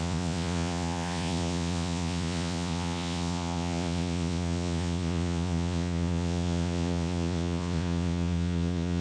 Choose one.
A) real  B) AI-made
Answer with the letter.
B